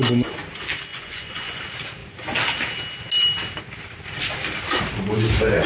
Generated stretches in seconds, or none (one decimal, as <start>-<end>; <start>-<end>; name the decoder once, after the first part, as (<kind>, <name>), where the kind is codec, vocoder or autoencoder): 0.9-1.6 (vocoder, Vocos)